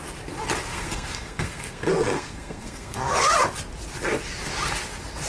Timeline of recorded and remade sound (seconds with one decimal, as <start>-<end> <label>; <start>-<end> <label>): 0.0-0.7 recorded; 0.7-3.3 remade; 3.3-5.3 recorded